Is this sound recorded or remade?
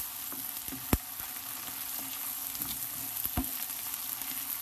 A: recorded